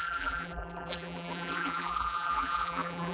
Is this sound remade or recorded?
remade